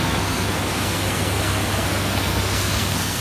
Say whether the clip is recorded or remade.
remade